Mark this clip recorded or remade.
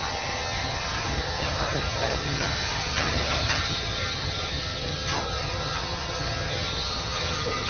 remade